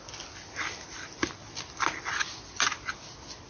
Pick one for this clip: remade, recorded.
recorded